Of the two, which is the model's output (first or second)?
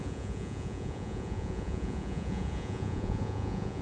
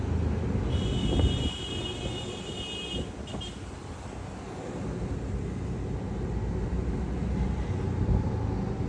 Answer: first